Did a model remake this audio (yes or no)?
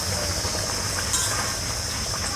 no